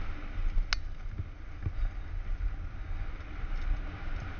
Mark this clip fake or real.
real